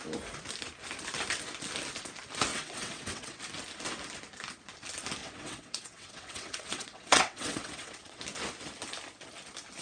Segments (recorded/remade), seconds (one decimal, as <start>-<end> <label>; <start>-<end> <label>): 0.0-2.5 recorded; 2.5-3.4 remade; 3.4-5.2 recorded; 5.2-8.2 remade; 8.2-9.8 recorded